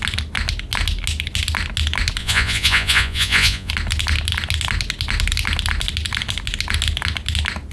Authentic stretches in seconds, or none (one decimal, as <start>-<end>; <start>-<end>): 0.0-2.2; 3.7-7.7